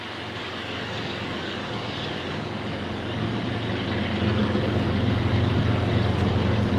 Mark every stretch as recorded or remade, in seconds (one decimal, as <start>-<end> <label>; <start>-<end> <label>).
0.0-0.4 recorded; 0.4-3.5 remade; 3.5-4.4 recorded; 4.4-5.3 remade; 5.3-6.8 recorded

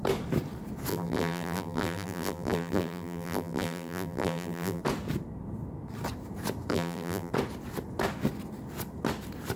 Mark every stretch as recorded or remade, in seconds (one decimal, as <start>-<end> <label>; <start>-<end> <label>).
0.0-0.9 recorded; 0.9-4.8 remade; 4.8-6.7 recorded; 6.7-7.3 remade; 7.3-9.6 recorded

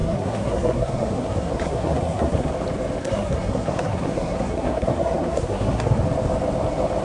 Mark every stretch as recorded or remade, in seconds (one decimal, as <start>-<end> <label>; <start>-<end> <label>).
0.0-2.5 remade; 2.5-3.0 recorded; 3.0-6.0 remade; 6.0-7.0 recorded

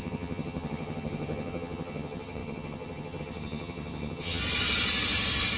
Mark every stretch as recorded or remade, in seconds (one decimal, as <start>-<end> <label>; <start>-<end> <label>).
0.0-4.4 remade; 4.4-5.6 recorded

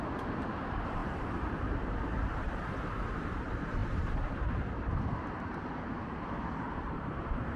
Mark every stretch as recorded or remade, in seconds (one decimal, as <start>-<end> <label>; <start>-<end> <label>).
0.0-7.6 remade

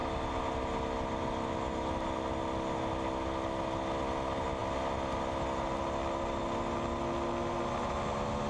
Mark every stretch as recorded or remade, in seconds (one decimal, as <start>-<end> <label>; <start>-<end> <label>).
0.0-8.5 recorded

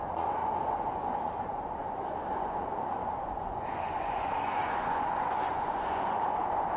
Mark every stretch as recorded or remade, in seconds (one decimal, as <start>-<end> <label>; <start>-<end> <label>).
0.0-6.8 remade

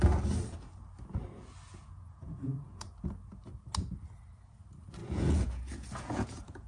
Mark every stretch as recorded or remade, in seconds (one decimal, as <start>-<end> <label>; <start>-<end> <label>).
0.0-1.8 recorded; 1.8-2.9 remade; 2.9-5.0 recorded; 5.0-6.7 remade